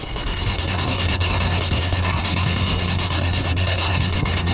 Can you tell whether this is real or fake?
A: fake